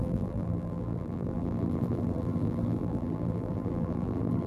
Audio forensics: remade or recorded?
remade